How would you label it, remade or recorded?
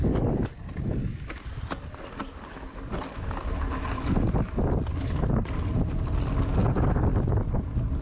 recorded